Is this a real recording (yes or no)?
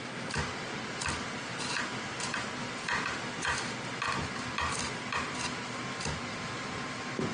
yes